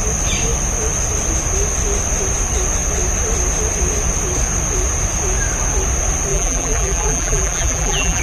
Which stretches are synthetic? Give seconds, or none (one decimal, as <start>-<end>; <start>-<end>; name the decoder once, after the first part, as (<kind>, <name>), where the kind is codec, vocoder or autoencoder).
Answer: 6.3-8.2 (vocoder, BigVGAN v2)